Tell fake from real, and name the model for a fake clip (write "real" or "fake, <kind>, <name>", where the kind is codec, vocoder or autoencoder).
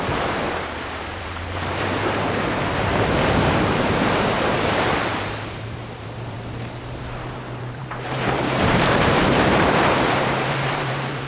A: fake, vocoder, BigVGAN v2